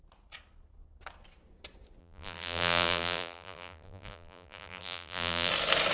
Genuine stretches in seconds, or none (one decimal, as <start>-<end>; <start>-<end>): 0.0-2.0; 5.5-5.9